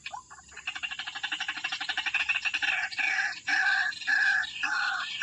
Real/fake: real